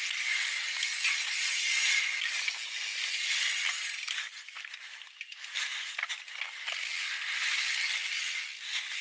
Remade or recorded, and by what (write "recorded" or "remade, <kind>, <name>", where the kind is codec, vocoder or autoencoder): recorded